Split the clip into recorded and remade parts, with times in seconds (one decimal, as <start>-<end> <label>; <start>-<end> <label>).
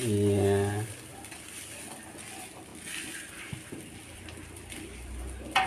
0.0-1.1 recorded; 1.1-1.8 remade; 1.8-2.7 recorded; 2.7-5.2 remade; 5.2-5.7 recorded